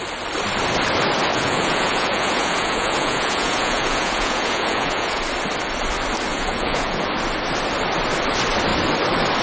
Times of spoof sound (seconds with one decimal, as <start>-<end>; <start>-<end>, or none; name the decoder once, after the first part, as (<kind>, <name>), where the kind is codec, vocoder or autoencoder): 1.3-5.2 (vocoder, Vocos); 6.3-7.1